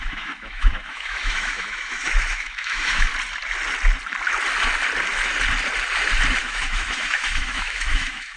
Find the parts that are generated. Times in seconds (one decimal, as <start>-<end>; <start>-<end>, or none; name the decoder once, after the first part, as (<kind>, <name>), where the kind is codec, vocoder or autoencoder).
0.0-3.1 (autoencoder, DAC-VAE); 6.4-8.4